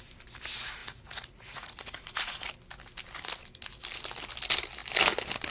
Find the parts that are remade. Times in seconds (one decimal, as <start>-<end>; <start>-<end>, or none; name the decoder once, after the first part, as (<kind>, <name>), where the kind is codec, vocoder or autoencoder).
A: 0.8-2.5 (vocoder, Vocos)